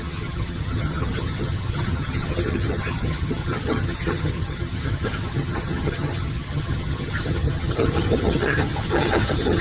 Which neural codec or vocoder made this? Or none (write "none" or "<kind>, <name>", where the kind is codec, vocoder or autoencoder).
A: vocoder, HiFi-GAN